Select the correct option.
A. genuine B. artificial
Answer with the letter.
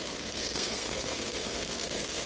B